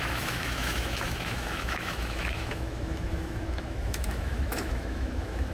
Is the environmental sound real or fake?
fake